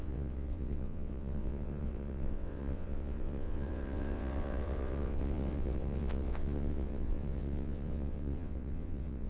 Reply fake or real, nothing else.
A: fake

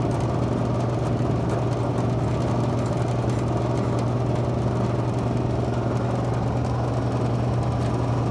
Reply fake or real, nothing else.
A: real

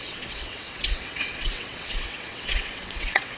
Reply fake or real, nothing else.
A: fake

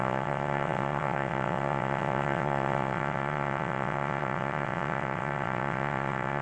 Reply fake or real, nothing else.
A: fake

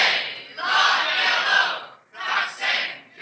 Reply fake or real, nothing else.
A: real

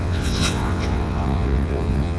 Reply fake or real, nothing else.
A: fake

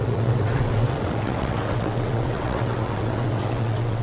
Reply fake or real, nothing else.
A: fake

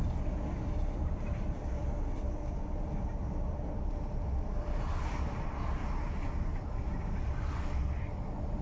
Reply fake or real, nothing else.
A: real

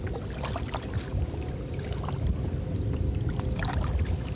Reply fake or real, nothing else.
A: real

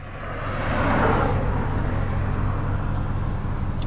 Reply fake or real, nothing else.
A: real